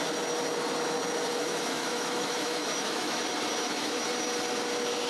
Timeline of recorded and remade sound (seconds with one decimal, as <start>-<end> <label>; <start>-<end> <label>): 0.0-1.4 recorded; 1.4-3.2 remade; 3.2-3.6 recorded; 3.6-4.1 remade; 4.1-5.1 recorded